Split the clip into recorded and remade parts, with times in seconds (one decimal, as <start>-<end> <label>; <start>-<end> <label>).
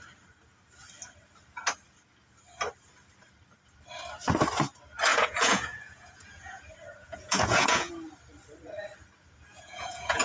0.0-5.1 recorded; 5.1-6.6 remade; 6.6-7.0 recorded; 7.0-7.9 remade; 7.9-9.5 recorded; 9.5-10.2 remade